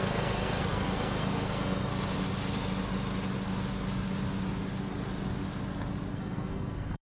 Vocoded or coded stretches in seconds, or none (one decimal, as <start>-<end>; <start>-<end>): 0.0-1.9; 6.1-7.0